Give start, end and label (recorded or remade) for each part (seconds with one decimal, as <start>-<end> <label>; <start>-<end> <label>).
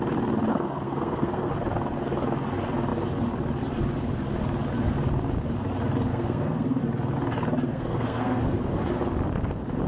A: 0.0-0.5 recorded; 0.5-1.5 remade; 1.5-6.1 recorded; 6.1-6.8 remade; 6.8-7.7 recorded; 7.7-8.4 remade; 8.4-9.9 recorded